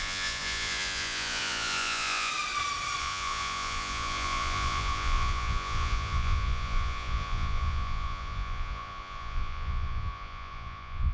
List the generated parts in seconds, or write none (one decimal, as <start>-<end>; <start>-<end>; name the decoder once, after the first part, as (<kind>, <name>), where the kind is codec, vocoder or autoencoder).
0.0-2.3 (vocoder, Vocos); 3.0-11.1